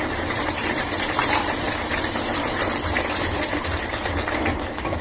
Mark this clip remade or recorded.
remade